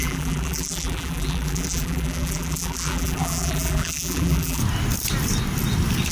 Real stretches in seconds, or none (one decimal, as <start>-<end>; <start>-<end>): 4.6-6.1